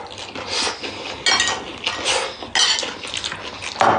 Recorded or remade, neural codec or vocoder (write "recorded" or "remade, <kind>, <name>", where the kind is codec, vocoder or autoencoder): recorded